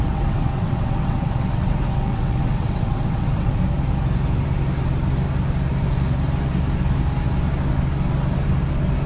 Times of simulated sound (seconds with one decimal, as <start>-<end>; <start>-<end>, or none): 0.0-3.6